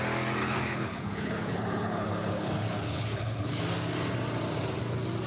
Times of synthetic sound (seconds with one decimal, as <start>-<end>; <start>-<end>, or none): 0.4-3.6